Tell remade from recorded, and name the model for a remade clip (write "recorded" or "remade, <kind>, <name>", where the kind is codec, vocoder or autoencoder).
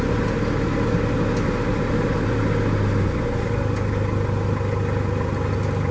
recorded